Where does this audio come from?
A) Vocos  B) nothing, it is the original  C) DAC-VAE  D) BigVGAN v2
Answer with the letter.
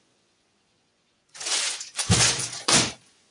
A